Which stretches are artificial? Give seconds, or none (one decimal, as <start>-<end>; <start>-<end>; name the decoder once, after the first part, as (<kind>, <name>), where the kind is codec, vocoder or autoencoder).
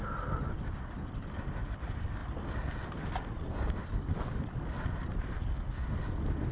none